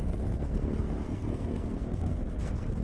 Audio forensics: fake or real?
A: fake